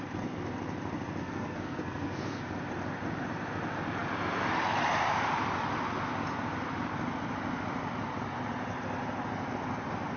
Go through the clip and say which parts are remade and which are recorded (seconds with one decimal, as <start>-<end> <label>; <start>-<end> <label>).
0.0-1.2 recorded; 1.2-2.4 remade; 2.4-10.2 recorded